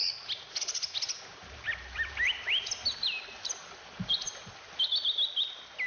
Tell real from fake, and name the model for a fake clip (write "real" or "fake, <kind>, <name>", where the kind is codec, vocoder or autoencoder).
real